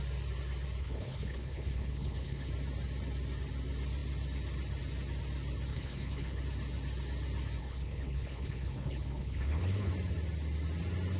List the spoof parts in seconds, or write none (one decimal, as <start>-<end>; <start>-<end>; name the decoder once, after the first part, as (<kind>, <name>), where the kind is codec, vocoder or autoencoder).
0.8-2.5 (codec, HILCodec); 5.7-6.4; 7.6-9.9